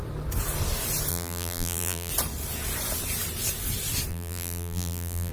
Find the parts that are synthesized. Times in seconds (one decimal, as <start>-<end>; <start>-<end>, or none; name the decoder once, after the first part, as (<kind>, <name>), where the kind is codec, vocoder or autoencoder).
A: 1.1-2.1 (vocoder, BigVGAN v2); 4.1-5.3